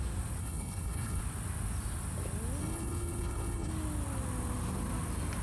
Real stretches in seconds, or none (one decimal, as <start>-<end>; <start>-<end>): 0.0-0.4; 1.2-2.6; 3.7-5.4